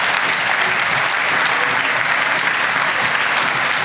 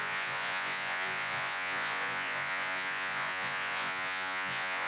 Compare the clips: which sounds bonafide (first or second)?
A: first